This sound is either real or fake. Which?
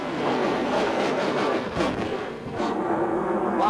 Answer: fake